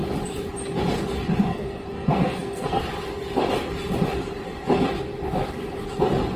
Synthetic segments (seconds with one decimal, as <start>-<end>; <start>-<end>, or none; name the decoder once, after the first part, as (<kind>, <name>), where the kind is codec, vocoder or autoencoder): 1.5-2.8 (codec, SNAC)